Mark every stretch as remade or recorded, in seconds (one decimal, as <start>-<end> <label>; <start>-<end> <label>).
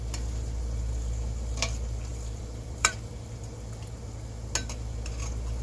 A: 0.0-2.1 recorded; 2.1-3.1 remade; 3.1-5.6 recorded